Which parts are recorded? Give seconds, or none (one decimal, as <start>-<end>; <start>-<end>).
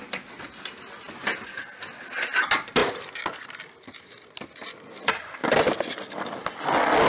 0.0-7.1